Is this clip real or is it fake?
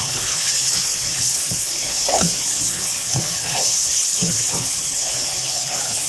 fake